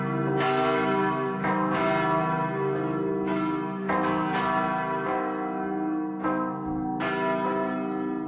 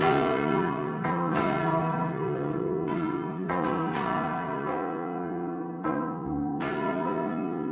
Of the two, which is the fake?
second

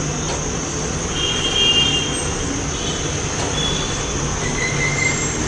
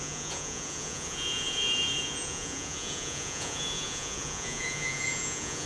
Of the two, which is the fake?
second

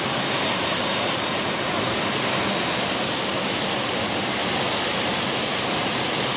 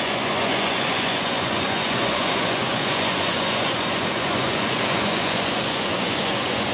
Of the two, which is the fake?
second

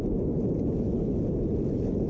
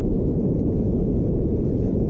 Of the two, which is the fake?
second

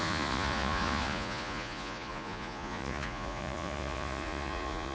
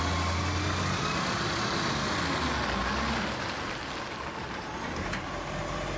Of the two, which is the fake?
first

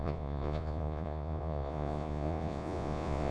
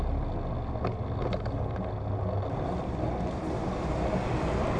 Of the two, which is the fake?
first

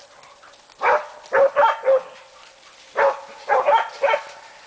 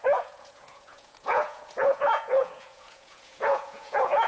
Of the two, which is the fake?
second